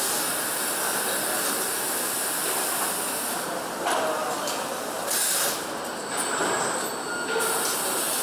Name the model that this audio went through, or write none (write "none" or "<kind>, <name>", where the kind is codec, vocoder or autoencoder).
none